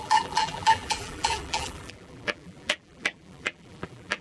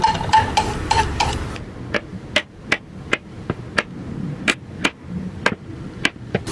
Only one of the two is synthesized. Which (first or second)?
first